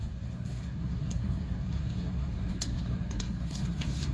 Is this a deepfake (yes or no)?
yes